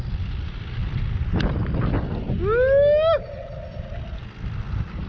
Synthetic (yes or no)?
no